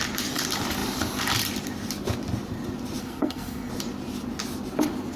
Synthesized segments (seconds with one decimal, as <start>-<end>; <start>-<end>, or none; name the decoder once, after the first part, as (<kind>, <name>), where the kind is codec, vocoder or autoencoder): 3.0-3.7 (codec, SNAC)